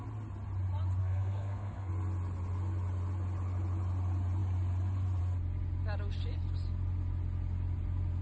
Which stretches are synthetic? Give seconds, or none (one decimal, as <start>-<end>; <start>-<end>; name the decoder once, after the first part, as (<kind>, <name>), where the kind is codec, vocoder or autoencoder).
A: 1.0-1.9 (codec, SNAC)